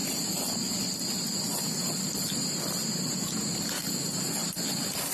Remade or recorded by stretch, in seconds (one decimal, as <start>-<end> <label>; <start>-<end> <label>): 0.0-5.1 recorded